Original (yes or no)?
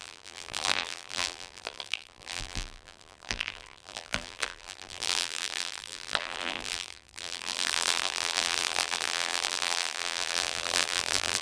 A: no